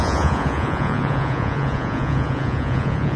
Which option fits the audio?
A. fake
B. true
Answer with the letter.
A